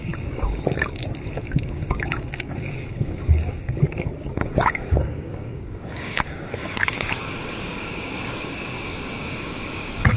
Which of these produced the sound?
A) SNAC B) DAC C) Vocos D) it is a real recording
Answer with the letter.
B